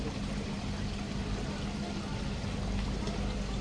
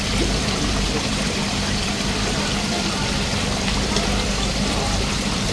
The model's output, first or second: second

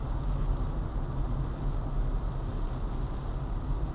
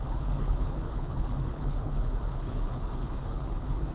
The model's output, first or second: second